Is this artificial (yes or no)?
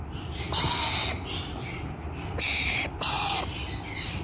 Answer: no